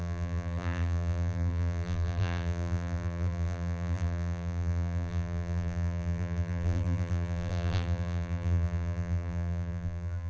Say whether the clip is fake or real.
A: fake